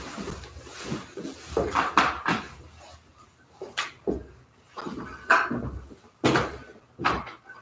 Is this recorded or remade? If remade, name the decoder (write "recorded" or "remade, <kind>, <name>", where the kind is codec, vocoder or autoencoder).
recorded